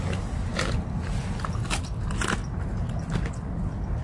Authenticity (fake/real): real